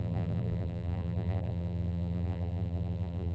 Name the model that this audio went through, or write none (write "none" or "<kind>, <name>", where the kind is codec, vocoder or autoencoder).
vocoder, BigVGAN v2